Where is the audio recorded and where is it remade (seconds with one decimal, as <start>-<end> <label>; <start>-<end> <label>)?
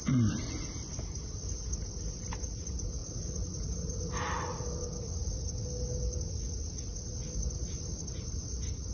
0.0-8.9 recorded